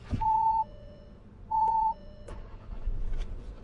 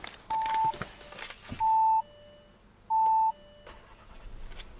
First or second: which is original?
second